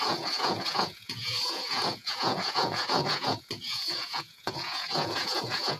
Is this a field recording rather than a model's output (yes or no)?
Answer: no